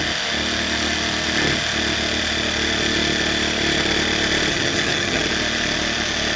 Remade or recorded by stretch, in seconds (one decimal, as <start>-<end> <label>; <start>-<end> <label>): 0.0-4.5 recorded; 4.5-5.2 remade; 5.2-6.4 recorded

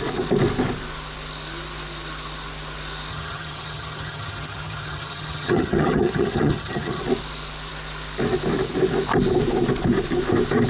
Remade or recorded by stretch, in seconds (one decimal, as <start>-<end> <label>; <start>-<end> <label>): 0.0-3.1 recorded; 3.1-7.0 remade; 7.0-10.7 recorded

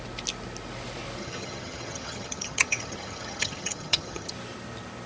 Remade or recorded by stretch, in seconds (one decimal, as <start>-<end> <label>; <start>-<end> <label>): 0.0-1.2 recorded; 1.2-4.3 remade; 4.3-5.1 recorded

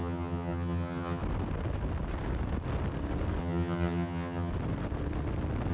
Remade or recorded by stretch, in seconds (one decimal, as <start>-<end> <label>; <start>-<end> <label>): 0.0-1.2 remade; 1.2-3.4 recorded; 3.4-4.5 remade; 4.5-5.7 recorded